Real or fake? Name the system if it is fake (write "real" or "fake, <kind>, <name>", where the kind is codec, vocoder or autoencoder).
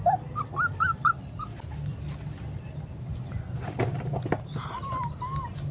real